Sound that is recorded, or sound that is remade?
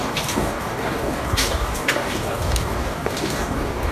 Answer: remade